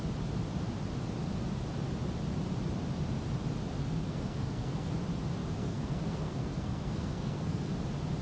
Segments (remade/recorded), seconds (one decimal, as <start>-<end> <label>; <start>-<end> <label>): 0.0-3.8 recorded; 3.8-5.0 remade; 5.0-5.4 recorded; 5.4-7.7 remade; 7.7-8.2 recorded